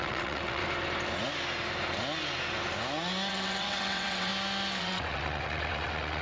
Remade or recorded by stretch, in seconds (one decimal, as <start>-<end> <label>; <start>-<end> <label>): 0.0-0.6 remade; 0.6-3.3 recorded; 3.3-4.3 remade; 4.3-4.8 recorded; 4.8-6.2 remade